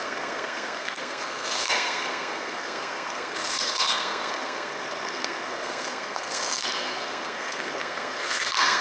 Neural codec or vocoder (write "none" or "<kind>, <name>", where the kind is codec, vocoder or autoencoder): codec, SNAC